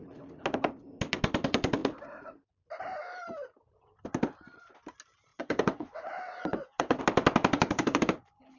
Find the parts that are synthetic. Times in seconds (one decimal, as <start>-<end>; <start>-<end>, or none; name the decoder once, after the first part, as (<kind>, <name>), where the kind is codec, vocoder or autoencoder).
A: 5.3-7.0 (vocoder, WaveNeXt)